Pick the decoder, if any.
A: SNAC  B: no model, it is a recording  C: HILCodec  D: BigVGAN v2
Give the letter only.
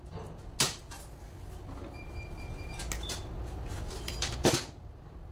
B